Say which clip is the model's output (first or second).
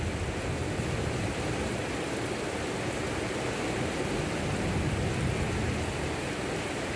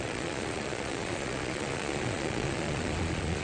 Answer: second